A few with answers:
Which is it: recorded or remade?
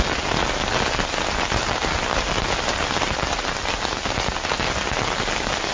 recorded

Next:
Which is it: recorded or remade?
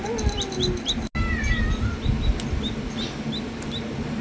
recorded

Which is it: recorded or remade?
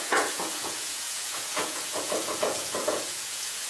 remade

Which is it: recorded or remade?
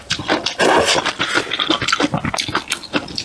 recorded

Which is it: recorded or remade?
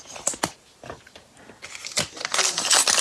recorded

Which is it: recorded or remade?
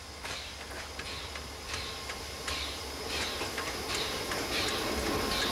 recorded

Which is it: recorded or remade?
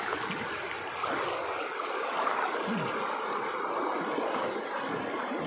recorded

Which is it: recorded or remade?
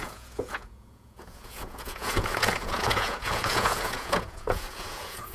remade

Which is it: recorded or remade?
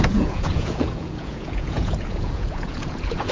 remade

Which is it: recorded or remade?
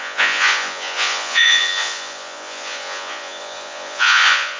remade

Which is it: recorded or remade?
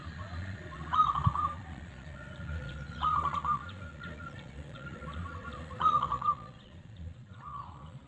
remade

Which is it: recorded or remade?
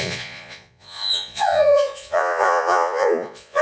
remade